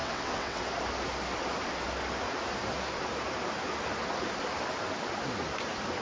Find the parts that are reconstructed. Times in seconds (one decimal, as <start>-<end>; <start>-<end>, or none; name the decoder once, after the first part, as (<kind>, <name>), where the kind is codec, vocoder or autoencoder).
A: 0.0-0.6 (vocoder, WaveNeXt)